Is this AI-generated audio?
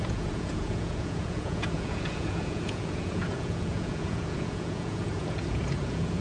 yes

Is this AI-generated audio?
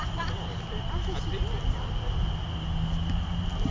no